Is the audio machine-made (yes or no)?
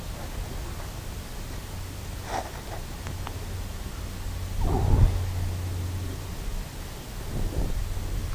no